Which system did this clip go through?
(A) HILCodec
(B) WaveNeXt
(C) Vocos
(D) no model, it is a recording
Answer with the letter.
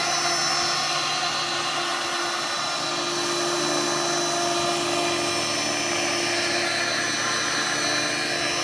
D